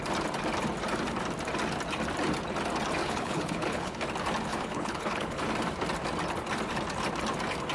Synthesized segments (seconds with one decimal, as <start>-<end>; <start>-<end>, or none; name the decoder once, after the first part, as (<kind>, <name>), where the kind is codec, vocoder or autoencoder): 3.0-4.0 (codec, HILCodec); 4.5-5.4